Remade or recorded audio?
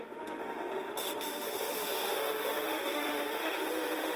remade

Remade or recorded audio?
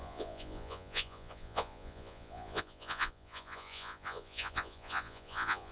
remade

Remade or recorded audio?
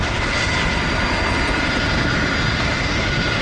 recorded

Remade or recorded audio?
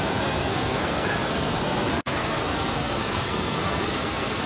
remade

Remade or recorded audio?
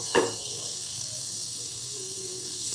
remade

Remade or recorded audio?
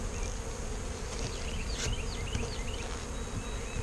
recorded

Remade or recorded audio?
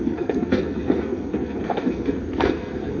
remade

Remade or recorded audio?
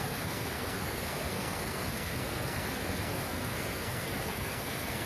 remade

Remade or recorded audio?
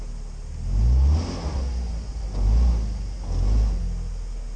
recorded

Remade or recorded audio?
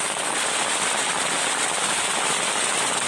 recorded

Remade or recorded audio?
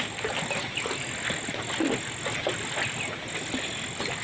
recorded